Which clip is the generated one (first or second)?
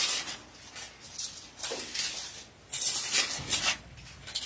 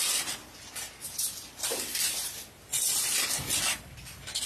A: second